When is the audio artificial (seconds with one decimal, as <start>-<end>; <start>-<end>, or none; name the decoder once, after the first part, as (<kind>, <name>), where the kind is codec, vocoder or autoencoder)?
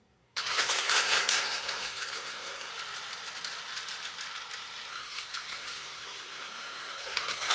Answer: 0.0-2.7 (codec, SNAC); 4.9-7.5